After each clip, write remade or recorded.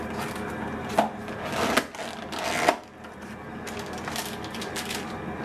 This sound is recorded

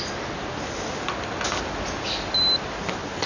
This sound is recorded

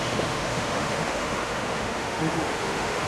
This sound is remade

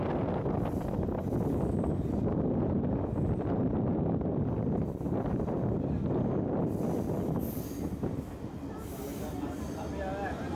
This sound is recorded